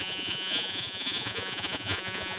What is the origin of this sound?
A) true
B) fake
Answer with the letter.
B